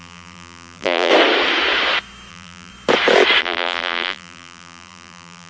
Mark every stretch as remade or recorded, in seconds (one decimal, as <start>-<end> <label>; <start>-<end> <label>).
0.0-1.1 remade; 1.1-2.3 recorded; 2.3-2.7 remade; 2.7-3.4 recorded; 3.4-5.5 remade